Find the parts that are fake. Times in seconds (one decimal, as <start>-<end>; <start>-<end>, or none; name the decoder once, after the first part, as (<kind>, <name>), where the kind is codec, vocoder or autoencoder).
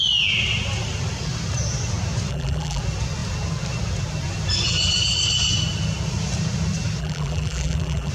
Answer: 2.3-2.8 (vocoder, BigVGAN v2); 7.0-8.1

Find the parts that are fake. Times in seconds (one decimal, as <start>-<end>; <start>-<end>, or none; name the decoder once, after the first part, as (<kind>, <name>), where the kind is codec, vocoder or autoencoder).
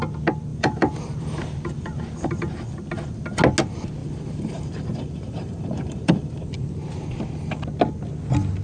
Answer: 0.5-3.4 (vocoder, BigVGAN v2); 4.0-6.4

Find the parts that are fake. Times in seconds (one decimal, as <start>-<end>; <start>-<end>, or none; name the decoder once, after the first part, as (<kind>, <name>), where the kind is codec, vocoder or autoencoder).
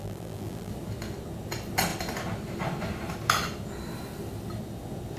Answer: 0.0-0.7 (vocoder, BigVGAN v2)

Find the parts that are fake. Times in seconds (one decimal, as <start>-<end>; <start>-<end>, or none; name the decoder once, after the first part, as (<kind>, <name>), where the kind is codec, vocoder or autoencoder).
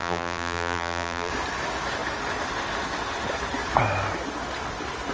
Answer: 0.0-1.3 (vocoder, BigVGAN v2)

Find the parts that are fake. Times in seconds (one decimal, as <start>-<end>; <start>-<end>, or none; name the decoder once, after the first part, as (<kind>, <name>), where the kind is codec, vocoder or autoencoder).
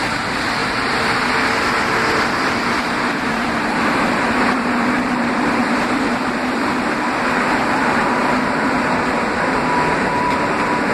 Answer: 0.0-10.9 (vocoder, BigVGAN v2)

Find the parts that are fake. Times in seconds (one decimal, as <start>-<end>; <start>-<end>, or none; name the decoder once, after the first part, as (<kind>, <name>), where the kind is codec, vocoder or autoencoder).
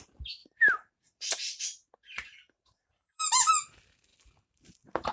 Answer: 0.4-3.5 (vocoder, BigVGAN v2); 4.1-5.1